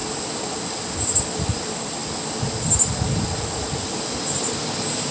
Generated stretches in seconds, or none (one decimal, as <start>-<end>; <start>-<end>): none